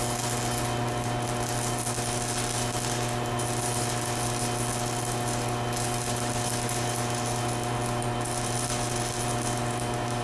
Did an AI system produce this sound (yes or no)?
no